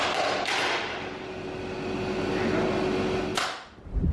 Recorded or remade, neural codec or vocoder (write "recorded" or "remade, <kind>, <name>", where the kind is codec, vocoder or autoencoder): recorded